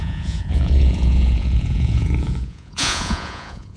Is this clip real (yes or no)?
no